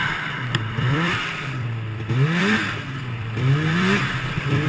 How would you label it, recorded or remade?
remade